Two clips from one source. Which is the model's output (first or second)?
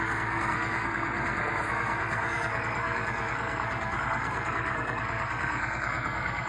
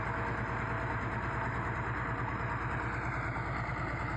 first